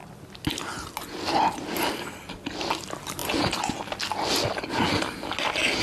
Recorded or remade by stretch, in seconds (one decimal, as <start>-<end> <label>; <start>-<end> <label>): 0.0-5.8 recorded